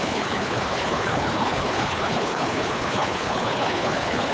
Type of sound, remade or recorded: remade